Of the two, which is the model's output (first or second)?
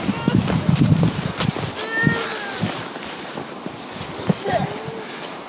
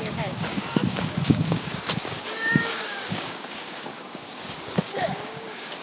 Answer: second